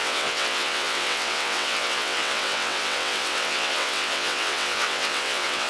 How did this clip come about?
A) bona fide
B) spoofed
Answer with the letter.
B